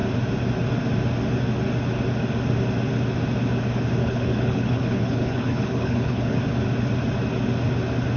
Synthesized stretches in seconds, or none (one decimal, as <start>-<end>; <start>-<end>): 4.0-6.4